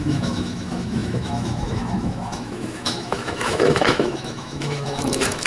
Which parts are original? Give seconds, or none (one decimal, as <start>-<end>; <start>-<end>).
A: none